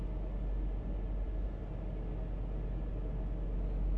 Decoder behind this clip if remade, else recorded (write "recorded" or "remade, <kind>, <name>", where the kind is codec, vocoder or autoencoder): recorded